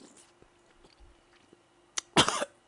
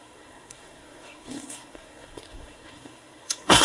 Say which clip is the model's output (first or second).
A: second